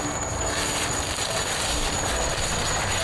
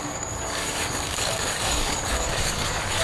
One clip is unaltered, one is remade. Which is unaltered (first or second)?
first